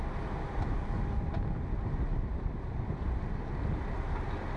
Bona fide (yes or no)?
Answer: yes